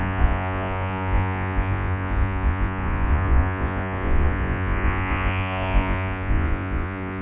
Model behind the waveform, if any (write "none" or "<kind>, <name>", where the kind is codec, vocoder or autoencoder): vocoder, Vocos